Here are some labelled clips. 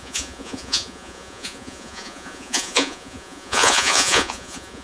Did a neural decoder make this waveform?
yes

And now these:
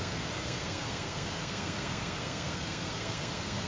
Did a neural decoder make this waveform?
yes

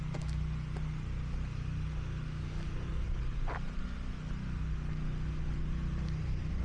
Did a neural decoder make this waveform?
no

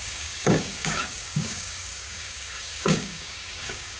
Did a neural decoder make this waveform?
yes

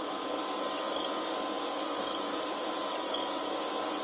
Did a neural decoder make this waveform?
no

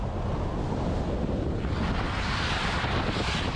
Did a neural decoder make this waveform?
no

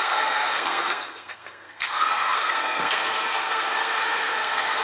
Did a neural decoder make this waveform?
yes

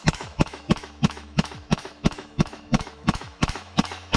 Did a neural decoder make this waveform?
yes